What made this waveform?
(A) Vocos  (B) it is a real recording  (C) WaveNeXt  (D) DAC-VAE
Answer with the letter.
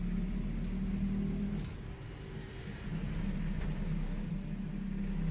B